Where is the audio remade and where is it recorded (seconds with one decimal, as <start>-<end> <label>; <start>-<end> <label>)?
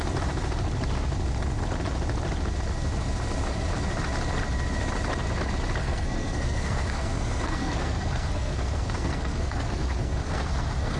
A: 0.0-5.8 recorded; 5.8-11.0 remade